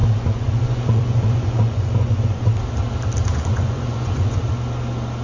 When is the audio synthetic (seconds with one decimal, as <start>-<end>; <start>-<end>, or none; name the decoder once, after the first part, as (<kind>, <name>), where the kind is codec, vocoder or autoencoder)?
0.0-2.5 (vocoder, Vocos); 3.3-4.4